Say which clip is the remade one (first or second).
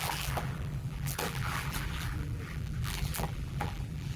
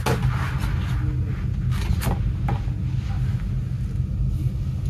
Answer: first